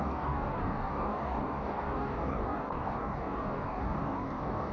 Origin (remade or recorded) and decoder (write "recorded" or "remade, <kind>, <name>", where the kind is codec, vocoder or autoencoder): remade, codec, DAC